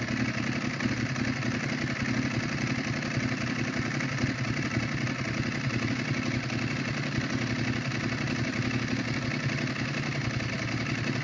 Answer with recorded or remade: recorded